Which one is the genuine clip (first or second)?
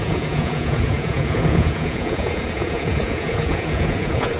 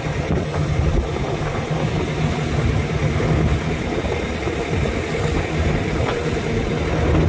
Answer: second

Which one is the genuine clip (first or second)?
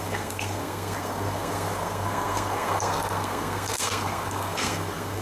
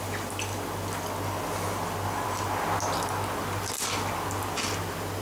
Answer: second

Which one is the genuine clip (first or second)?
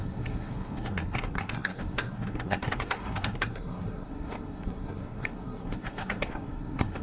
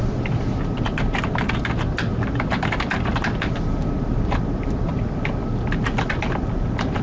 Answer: second